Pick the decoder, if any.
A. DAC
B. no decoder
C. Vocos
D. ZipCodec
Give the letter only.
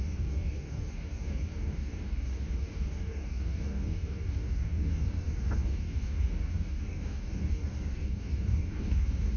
A